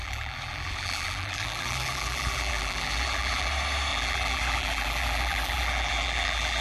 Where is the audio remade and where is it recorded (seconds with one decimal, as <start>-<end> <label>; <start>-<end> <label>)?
0.0-3.5 remade; 3.5-3.9 recorded; 3.9-6.6 remade